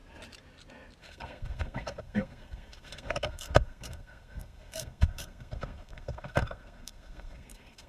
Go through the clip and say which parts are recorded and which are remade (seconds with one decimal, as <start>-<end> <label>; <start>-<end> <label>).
0.0-1.0 recorded; 1.0-7.9 remade